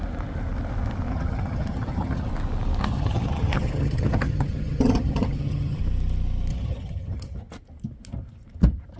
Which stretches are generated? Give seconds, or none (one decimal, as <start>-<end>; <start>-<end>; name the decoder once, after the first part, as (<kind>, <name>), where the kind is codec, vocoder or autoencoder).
1.1-2.3 (vocoder, HiFi-GAN); 2.8-5.8; 6.5-7.4

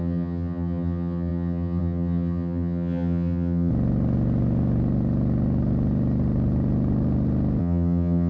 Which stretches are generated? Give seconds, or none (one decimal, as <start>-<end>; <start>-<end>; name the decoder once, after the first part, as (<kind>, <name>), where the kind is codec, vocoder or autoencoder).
0.0-3.7 (vocoder, HiFi-GAN); 7.6-8.3

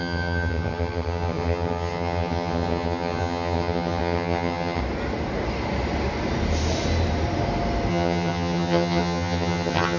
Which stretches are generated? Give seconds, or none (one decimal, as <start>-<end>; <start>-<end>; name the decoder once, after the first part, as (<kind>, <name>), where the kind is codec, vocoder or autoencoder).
0.0-4.8 (vocoder, HiFi-GAN); 7.9-10.0